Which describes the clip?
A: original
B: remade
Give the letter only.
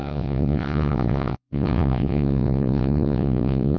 B